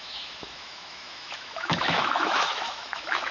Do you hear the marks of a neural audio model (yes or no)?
yes